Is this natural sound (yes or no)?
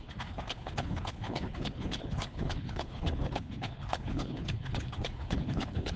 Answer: no